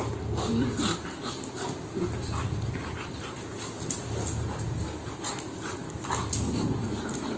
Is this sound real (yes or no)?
yes